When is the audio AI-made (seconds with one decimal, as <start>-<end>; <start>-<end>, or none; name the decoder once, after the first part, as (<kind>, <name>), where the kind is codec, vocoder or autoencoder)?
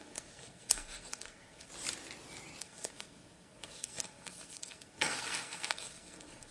0.0-1.7 (codec, SNAC); 2.6-6.5